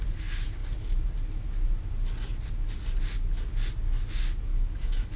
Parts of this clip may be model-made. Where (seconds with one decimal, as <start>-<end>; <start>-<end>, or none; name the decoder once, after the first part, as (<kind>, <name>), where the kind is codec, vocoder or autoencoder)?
4.5-5.2 (autoencoder, DAC-VAE)